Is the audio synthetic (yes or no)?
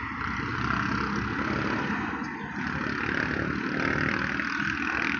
no